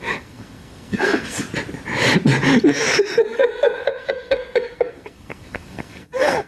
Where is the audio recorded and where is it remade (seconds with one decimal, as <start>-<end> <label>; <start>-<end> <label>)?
0.0-1.4 remade; 1.4-2.6 recorded; 2.6-6.5 remade